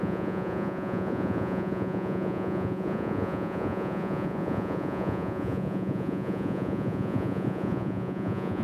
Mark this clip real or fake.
fake